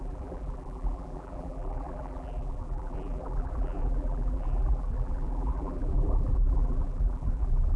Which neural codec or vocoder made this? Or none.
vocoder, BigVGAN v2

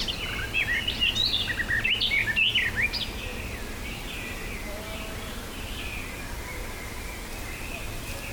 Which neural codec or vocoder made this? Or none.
none